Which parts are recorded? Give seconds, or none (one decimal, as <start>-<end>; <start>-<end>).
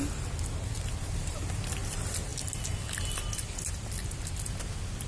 0.0-5.1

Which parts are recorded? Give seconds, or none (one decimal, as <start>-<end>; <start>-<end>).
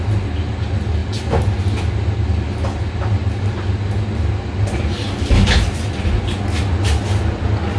0.0-7.8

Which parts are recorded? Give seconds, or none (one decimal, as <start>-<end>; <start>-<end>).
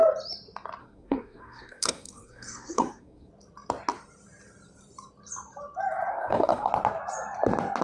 0.0-0.8; 3.3-6.1; 6.7-7.8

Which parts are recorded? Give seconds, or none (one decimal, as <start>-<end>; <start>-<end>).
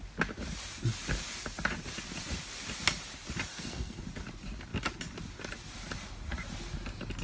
0.0-3.5; 4.0-7.2